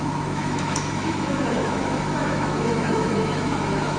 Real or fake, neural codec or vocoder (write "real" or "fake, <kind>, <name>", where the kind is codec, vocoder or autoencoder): fake, autoencoder, DAC-VAE